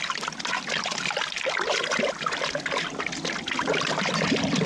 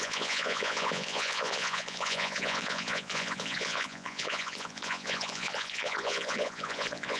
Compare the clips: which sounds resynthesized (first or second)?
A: second